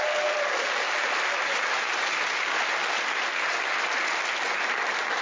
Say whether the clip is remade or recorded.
recorded